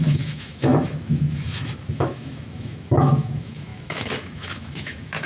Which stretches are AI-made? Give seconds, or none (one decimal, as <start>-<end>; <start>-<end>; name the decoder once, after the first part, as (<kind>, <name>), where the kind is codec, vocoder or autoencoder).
0.0-5.3 (autoencoder, DAC-VAE)